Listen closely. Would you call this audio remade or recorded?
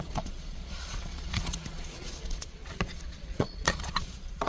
remade